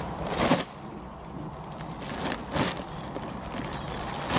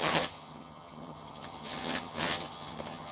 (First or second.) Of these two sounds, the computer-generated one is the second